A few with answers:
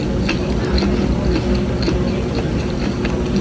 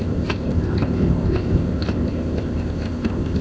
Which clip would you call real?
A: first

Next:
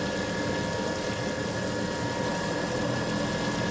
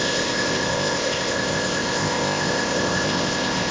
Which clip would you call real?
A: first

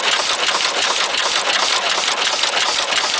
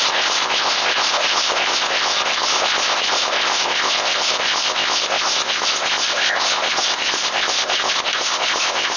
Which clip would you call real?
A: first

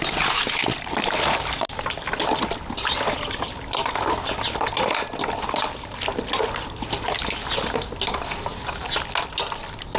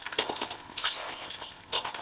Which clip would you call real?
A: first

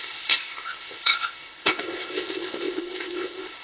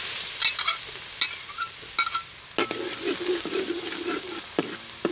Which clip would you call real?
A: second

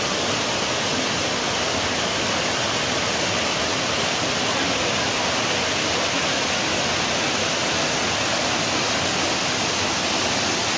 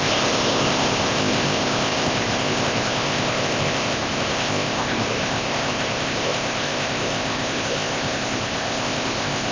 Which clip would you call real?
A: first